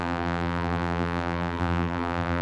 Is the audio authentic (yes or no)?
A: no